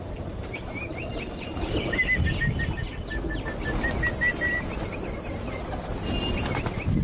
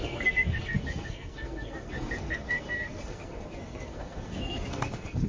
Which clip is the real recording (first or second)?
first